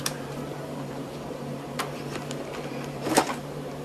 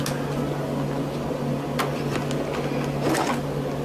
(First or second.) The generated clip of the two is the first